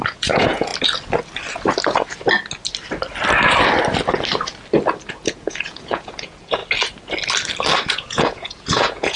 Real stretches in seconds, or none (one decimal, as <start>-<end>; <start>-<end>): 0.7-5.1; 6.6-7.9